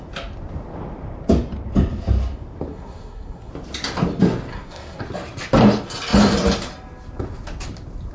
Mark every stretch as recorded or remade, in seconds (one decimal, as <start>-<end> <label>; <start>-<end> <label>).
0.0-2.7 recorded; 2.7-3.5 remade; 3.5-4.5 recorded; 4.5-5.0 remade; 5.0-8.1 recorded